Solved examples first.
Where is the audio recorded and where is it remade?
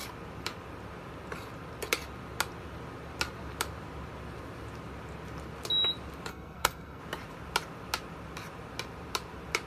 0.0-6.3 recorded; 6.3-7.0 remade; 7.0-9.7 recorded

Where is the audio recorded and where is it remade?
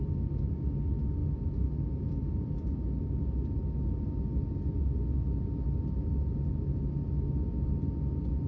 0.0-1.2 recorded; 1.2-2.7 remade; 2.7-8.5 recorded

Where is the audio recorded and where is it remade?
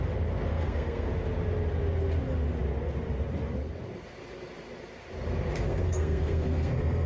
0.0-0.5 recorded; 0.5-1.1 remade; 1.1-5.7 recorded; 5.7-7.1 remade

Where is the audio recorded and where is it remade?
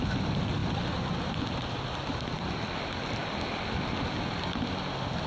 0.0-5.3 recorded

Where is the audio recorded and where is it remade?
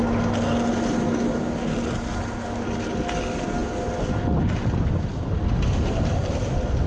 0.0-6.9 recorded